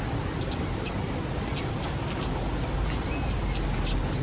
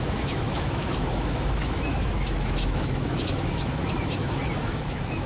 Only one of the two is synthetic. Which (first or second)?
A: second